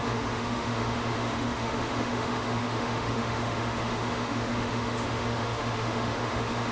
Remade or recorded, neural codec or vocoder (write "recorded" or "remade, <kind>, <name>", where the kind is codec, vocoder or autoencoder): remade, autoencoder, DAC-VAE